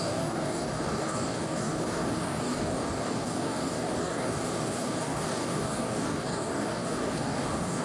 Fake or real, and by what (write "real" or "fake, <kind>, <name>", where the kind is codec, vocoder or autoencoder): fake, codec, DAC